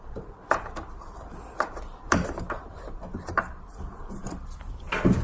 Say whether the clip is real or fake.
real